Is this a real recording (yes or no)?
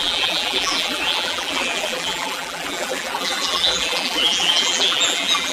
no